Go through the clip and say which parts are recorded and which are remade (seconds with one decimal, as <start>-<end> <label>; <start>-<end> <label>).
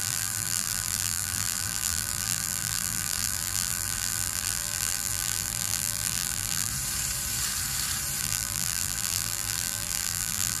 0.0-6.7 remade; 6.7-8.2 recorded; 8.2-10.6 remade